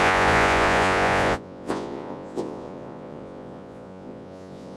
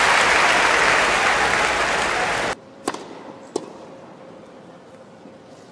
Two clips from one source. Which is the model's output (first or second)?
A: first